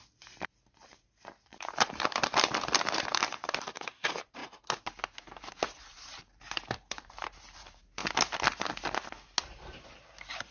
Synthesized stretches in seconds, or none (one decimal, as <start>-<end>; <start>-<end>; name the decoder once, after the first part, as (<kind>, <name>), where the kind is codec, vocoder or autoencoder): 0.0-4.4 (vocoder, BigVGAN v2); 5.4-8.0; 9.4-10.5